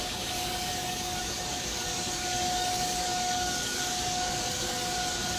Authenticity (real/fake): fake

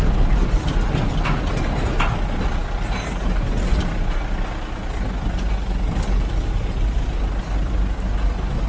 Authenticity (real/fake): real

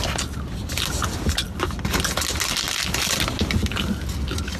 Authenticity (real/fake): real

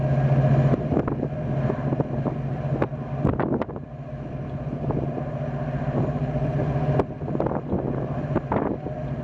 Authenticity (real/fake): real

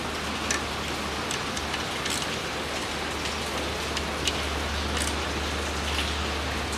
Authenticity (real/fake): real